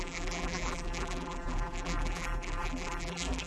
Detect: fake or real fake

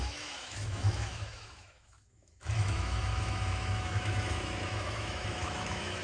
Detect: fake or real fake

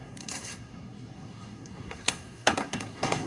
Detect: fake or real fake